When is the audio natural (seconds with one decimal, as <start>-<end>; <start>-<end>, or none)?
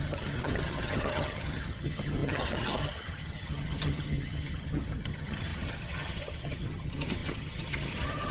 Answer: none